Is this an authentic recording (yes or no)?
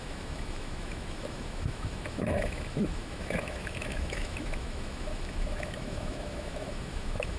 no